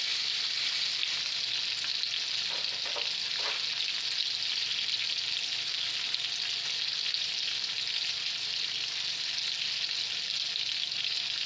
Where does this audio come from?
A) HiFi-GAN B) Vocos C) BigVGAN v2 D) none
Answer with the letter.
D